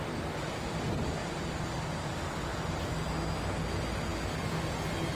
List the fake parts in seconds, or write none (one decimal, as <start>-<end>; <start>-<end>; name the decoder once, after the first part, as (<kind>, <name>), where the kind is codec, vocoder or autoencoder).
1.2-2.8 (vocoder, BigVGAN v2)